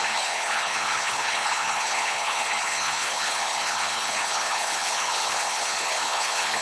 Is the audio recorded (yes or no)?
no